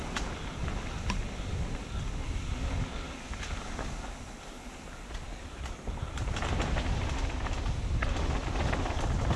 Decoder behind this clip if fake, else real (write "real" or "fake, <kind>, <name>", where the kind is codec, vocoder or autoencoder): real